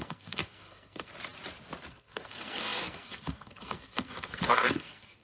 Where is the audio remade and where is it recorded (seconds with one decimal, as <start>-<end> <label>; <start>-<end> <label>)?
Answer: 0.0-1.1 remade; 1.1-1.9 recorded; 1.9-5.2 remade